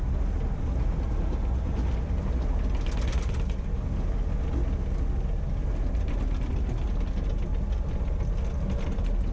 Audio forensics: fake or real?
real